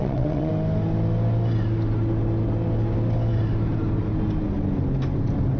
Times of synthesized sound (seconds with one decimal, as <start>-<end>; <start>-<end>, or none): 0.0-0.5